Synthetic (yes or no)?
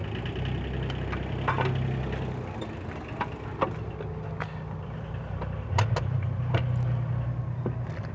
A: no